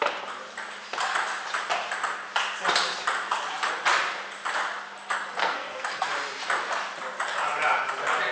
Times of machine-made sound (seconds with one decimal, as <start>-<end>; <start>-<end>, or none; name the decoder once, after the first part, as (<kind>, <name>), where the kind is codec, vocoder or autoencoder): 5.4-6.1 (codec, SNAC)